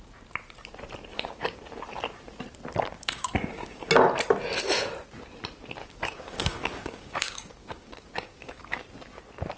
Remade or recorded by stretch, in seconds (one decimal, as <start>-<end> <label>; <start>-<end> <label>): 0.0-1.1 recorded; 1.1-1.6 remade; 1.6-2.9 recorded; 2.9-3.9 remade; 3.9-5.8 recorded; 5.8-8.8 remade; 8.8-9.6 recorded